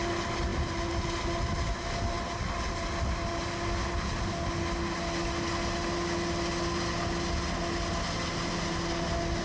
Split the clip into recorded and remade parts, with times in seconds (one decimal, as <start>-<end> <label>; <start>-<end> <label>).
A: 0.0-9.4 recorded